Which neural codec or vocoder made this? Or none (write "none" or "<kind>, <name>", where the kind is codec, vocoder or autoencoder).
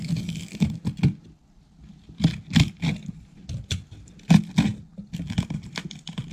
none